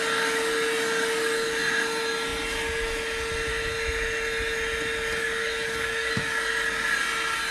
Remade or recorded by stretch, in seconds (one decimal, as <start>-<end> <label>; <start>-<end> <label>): 0.0-5.2 recorded; 5.2-6.1 remade; 6.1-7.5 recorded